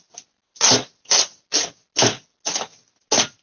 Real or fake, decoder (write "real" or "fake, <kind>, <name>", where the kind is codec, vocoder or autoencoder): real